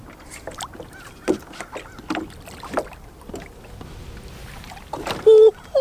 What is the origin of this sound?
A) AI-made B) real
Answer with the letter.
B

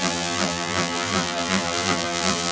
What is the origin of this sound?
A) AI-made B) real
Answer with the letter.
A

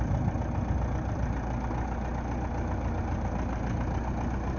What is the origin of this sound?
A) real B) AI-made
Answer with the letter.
A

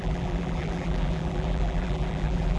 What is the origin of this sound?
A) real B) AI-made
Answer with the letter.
B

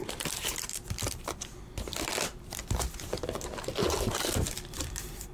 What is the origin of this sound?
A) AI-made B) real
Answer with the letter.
A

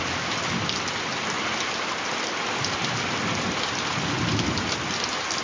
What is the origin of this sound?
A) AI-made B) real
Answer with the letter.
B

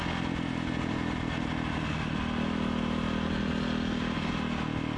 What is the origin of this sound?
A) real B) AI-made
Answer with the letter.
A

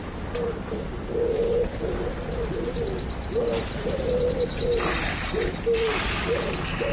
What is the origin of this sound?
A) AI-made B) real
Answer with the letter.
B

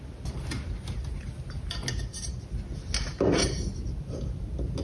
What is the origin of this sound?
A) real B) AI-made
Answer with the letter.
A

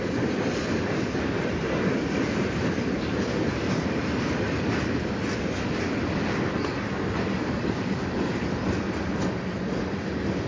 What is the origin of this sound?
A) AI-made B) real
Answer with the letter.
A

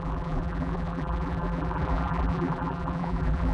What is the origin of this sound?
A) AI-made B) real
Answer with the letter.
A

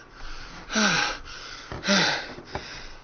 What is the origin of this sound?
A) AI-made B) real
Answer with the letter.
B